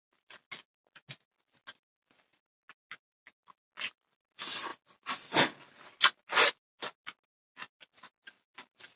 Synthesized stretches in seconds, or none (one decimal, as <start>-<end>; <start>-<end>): none